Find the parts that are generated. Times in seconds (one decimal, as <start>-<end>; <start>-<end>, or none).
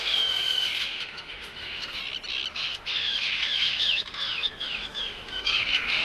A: 0.0-2.0; 2.5-6.0